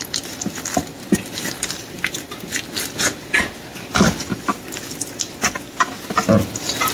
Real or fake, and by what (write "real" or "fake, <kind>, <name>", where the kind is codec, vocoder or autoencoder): real